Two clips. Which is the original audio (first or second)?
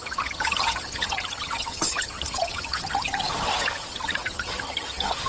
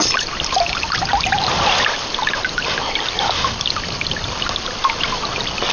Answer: second